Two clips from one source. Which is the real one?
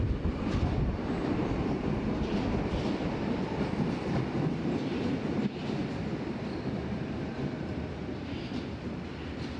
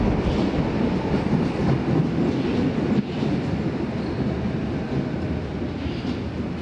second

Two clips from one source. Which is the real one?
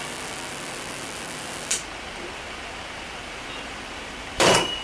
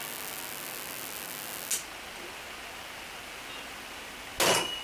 second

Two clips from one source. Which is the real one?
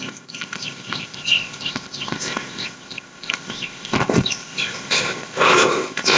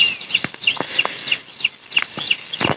second